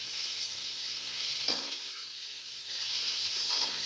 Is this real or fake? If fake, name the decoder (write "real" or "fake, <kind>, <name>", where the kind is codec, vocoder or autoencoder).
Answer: fake, codec, SNAC